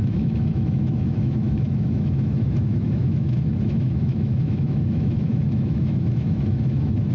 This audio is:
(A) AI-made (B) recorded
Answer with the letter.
A